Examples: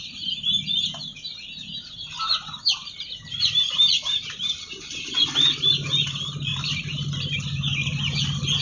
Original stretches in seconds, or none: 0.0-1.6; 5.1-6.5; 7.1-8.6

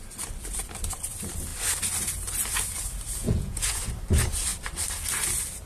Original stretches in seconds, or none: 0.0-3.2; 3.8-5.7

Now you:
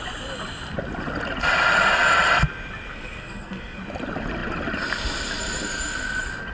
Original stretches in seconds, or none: 0.0-2.9; 3.8-6.5

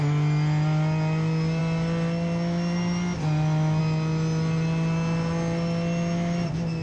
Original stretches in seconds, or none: 0.0-6.8

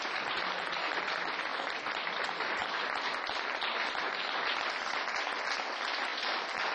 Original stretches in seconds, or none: 0.0-6.7